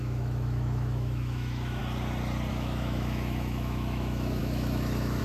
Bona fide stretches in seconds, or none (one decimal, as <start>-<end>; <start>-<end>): 1.8-2.5